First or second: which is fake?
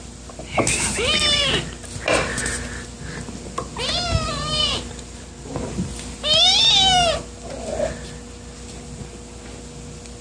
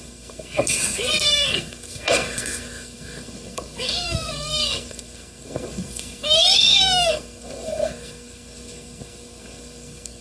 second